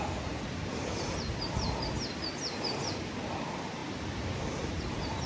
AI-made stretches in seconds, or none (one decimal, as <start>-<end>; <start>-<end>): none